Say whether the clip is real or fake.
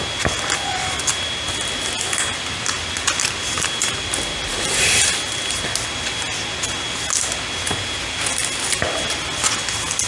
real